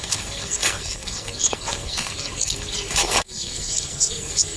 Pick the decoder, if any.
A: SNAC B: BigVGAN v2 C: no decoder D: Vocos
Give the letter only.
A